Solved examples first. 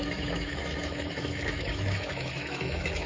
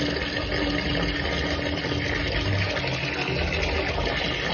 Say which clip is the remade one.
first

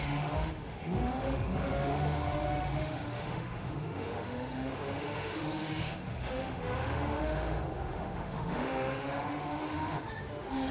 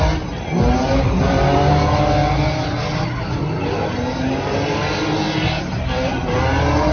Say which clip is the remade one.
first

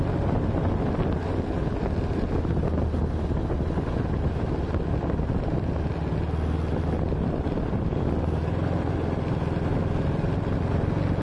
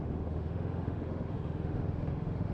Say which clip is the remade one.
second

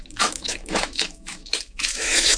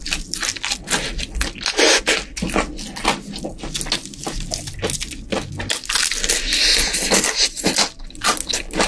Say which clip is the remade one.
first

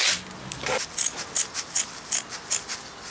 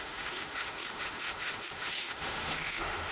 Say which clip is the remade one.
second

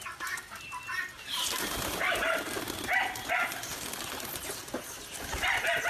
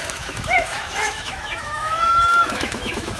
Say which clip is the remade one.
second